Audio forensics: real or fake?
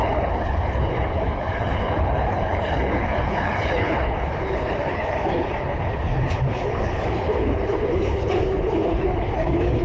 fake